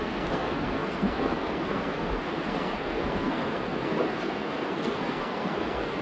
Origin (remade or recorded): remade